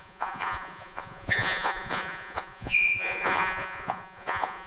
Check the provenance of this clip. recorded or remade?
remade